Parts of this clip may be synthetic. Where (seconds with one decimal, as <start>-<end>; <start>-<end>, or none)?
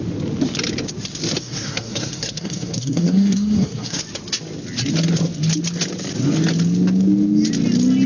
1.4-4.0